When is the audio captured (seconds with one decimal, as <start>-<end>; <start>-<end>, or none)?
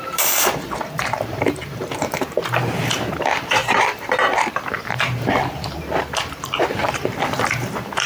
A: none